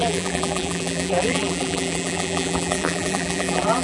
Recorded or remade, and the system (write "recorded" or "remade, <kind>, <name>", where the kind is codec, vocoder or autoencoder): remade, vocoder, BigVGAN v2